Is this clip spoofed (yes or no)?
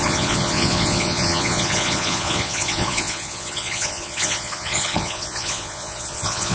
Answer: yes